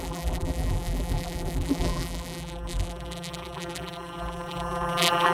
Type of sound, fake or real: fake